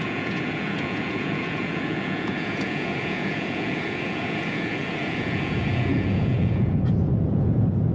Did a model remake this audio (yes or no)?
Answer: yes